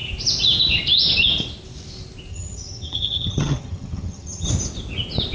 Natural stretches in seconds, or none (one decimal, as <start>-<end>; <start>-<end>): 0.0-2.3; 4.5-5.3